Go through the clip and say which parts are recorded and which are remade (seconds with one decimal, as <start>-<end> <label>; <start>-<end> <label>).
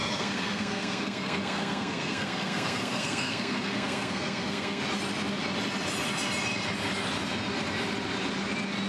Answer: 0.0-4.8 remade; 4.8-8.9 recorded